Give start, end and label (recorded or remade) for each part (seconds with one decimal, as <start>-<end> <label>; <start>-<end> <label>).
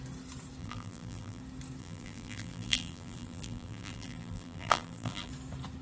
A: 0.0-0.6 recorded; 0.6-1.4 remade; 1.4-1.8 recorded; 1.8-5.3 remade; 5.3-5.8 recorded